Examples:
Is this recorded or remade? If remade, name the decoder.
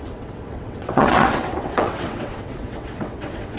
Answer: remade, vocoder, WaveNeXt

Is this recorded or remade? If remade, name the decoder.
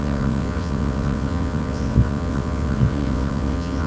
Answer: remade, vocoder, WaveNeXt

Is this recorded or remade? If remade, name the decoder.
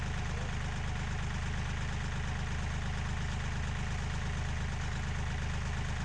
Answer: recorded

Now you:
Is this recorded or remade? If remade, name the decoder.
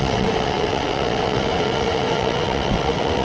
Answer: remade, vocoder, WaveNeXt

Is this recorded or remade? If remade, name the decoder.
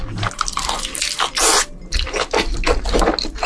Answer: recorded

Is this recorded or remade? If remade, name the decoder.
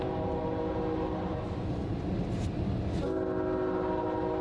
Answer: recorded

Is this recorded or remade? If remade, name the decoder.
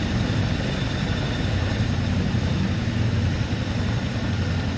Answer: recorded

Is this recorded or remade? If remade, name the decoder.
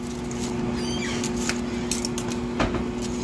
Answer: recorded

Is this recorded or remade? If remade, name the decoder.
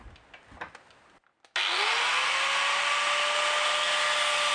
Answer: recorded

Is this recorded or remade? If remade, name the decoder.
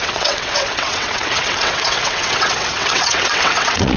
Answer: remade, vocoder, WaveNeXt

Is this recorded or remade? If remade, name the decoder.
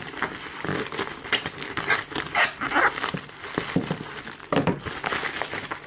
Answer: recorded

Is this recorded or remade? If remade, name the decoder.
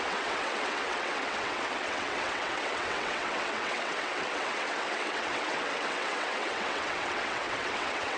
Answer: remade, vocoder, WaveNeXt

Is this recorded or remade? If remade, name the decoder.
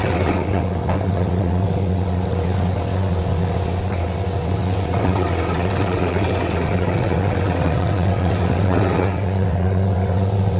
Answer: remade, vocoder, WaveNeXt